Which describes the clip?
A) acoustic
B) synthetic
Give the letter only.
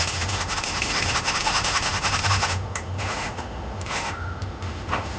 B